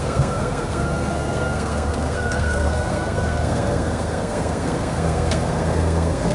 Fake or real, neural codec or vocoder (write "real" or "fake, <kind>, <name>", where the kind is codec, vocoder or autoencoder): fake, codec, SNAC